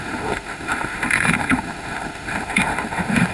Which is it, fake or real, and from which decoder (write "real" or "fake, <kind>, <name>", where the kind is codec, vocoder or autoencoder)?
fake, autoencoder, DAC-VAE